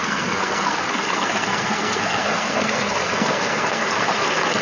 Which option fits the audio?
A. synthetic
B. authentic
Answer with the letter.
A